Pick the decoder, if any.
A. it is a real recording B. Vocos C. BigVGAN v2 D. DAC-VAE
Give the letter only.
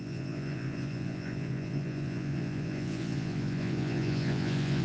B